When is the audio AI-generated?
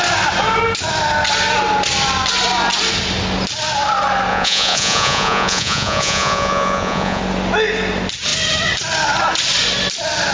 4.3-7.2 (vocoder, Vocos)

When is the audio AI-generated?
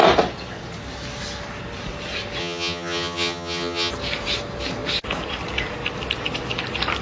2.4-3.9 (vocoder, HiFi-GAN)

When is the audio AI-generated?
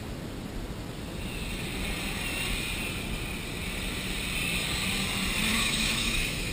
5.5-6.5 (autoencoder, DAC-VAE)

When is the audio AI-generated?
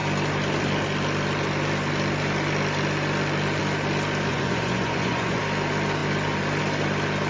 4.3-5.4 (vocoder, Vocos)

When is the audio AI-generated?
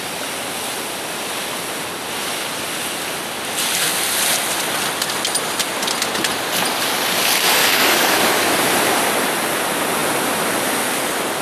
7.6-8.7 (codec, DAC)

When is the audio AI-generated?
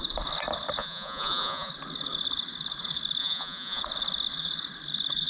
0.8-1.7 (vocoder, Vocos); 3.2-3.8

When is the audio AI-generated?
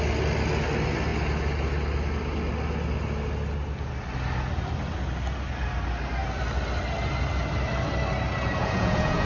8.6-9.3 (vocoder, Vocos)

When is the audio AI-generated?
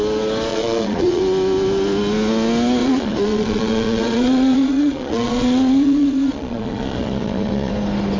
0.5-1.2 (vocoder, Vocos); 2.8-7.7